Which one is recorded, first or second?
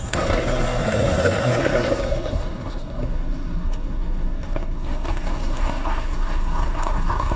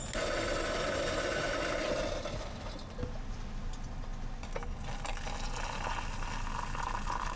second